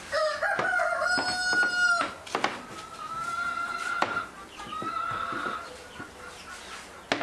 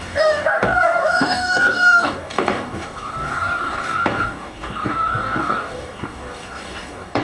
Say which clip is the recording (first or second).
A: first